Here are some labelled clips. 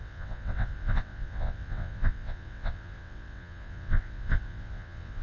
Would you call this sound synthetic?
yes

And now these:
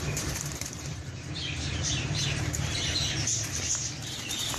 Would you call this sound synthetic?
yes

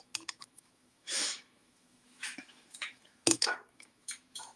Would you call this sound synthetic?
yes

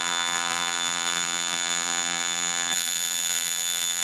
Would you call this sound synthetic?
yes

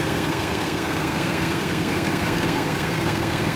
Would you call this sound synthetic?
yes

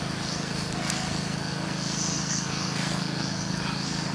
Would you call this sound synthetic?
yes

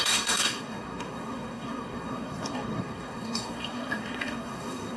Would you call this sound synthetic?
yes